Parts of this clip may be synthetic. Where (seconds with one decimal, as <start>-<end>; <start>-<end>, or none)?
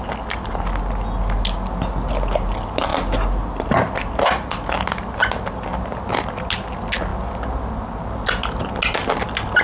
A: none